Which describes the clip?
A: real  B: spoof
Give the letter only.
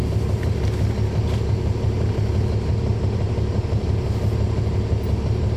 A